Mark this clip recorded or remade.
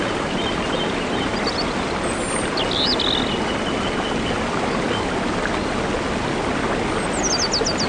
recorded